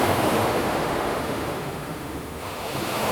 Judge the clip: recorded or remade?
remade